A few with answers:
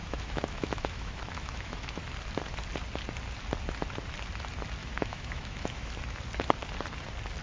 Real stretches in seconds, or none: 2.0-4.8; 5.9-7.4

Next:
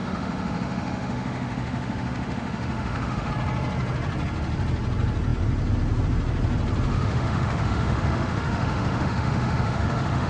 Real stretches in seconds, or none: 3.3-6.9

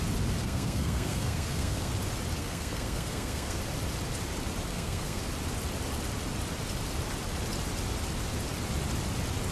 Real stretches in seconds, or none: 0.0-0.4; 1.9-2.4; 3.6-4.7; 5.2-9.5

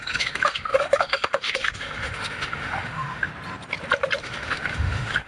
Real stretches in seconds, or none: 3.3-4.2

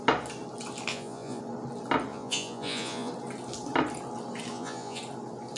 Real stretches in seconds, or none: 0.0-0.9; 1.4-2.1; 3.1-4.5; 5.0-5.6